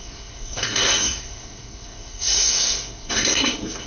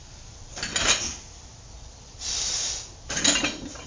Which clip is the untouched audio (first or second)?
second